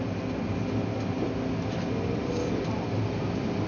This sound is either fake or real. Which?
real